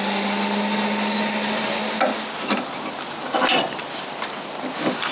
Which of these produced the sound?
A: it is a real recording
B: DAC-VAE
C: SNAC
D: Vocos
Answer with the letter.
A